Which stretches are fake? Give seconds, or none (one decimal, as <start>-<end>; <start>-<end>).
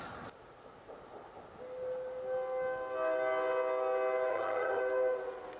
4.3-4.8